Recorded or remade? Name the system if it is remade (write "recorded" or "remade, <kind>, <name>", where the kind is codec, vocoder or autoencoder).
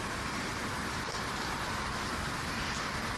recorded